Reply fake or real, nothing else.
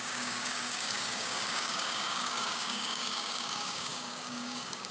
fake